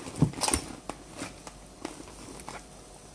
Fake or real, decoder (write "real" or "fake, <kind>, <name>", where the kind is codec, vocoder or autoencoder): real